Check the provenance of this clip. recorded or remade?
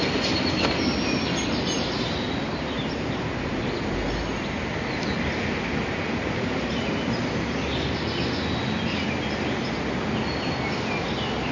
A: recorded